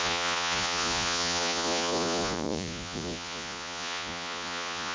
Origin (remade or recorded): remade